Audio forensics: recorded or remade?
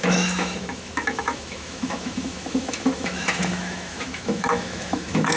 remade